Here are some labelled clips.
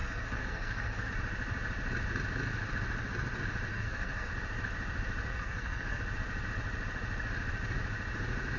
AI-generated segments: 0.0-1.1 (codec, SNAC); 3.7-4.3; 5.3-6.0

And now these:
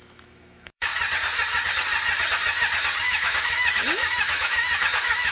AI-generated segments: 0.0-0.9 (autoencoder, DAC-VAE); 3.0-5.3

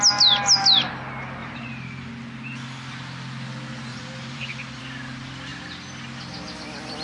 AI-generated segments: 1.4-2.1 (vocoder, BigVGAN v2); 3.9-4.8

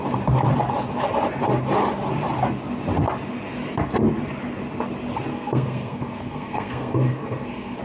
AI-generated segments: 5.3-7.8 (codec, SNAC)

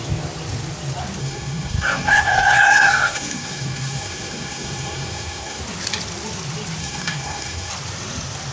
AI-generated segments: 1.2-5.6 (codec, SNAC); 6.8-7.7

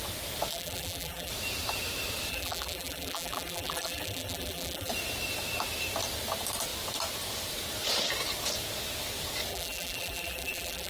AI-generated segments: 0.5-1.3 (vocoder, BigVGAN v2); 2.3-4.9; 9.5-10.9

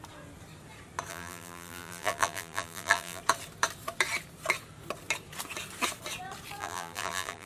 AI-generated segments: 1.1-3.2 (vocoder, BigVGAN v2); 6.6-7.5

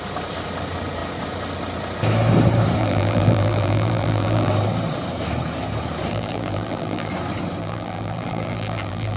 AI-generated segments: 2.8-4.5 (vocoder, BigVGAN v2); 6.1-7.1; 7.6-9.2